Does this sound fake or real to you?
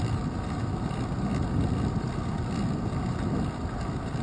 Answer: real